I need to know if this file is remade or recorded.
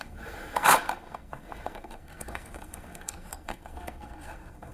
remade